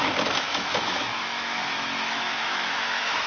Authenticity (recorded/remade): remade